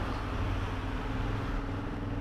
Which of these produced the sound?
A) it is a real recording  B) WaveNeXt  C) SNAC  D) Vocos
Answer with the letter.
A